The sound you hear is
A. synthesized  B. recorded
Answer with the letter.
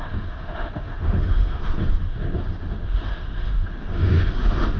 A